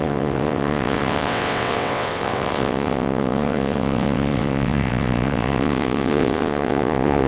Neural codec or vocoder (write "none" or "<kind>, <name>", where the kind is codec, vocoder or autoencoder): vocoder, WaveNeXt